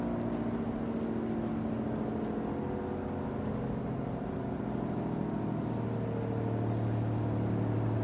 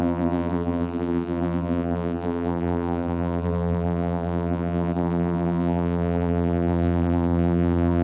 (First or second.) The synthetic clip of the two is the second